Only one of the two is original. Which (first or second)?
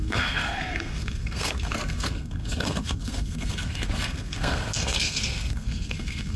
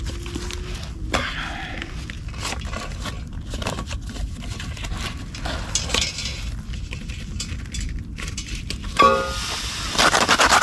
second